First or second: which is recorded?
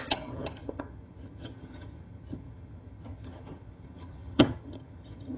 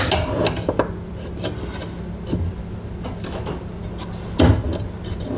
second